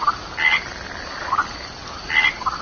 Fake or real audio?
real